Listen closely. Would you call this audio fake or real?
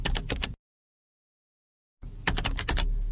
real